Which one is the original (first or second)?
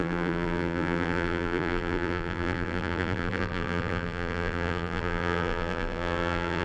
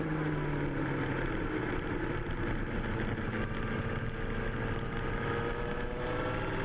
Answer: second